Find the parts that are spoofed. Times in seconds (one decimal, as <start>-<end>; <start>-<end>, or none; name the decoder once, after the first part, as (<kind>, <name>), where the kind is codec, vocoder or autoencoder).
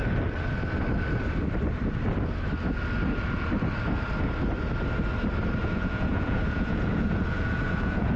5.6-8.2 (vocoder, Vocos)